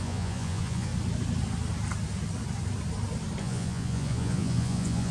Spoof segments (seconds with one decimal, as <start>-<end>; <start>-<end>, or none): 0.0-0.9; 3.4-5.1